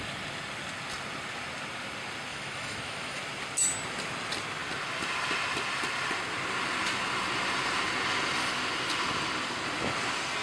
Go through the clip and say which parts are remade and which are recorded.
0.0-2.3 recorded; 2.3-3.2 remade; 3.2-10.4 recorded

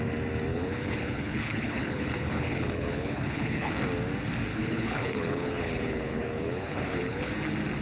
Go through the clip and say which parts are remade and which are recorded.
0.0-0.5 recorded; 0.5-3.7 remade; 3.7-4.5 recorded; 4.5-7.3 remade; 7.3-7.8 recorded

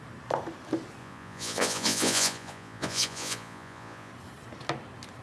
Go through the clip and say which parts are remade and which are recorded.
0.0-1.0 recorded; 1.0-4.1 remade; 4.1-5.2 recorded

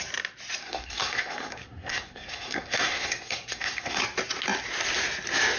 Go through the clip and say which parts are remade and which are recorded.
0.0-0.6 recorded; 0.6-4.0 remade; 4.0-5.6 recorded